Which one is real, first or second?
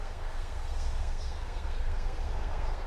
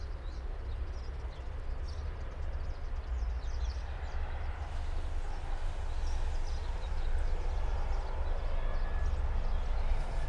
second